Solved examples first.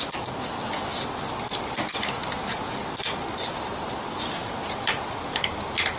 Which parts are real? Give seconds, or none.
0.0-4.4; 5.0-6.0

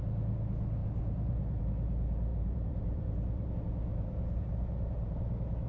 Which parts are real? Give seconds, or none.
0.0-0.8; 1.6-2.3; 3.5-3.9; 5.2-5.7